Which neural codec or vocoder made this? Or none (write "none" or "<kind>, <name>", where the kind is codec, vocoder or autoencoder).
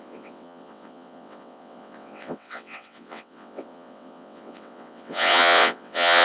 vocoder, WaveNeXt